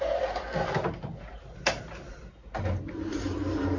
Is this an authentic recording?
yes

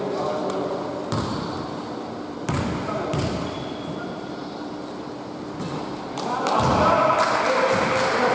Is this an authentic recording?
yes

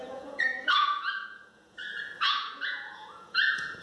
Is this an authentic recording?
no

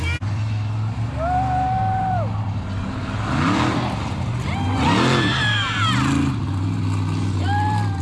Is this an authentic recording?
yes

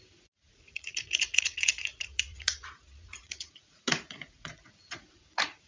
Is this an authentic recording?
no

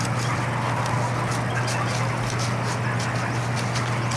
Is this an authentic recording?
yes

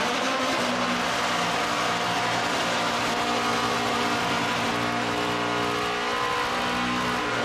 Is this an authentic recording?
yes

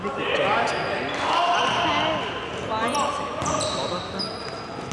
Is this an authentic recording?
yes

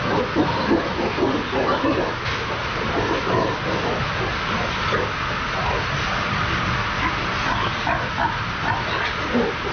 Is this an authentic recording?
yes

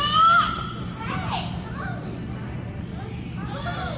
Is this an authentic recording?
yes